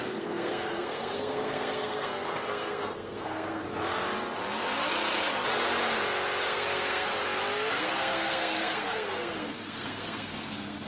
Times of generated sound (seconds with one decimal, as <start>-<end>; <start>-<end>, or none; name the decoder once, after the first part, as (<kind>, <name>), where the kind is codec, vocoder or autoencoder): 0.0-3.6 (codec, SNAC); 6.4-7.1; 7.7-10.9